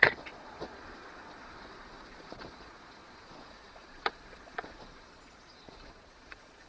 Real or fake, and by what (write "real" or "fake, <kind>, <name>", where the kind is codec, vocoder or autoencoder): fake, vocoder, Vocos